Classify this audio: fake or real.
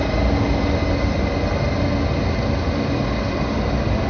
real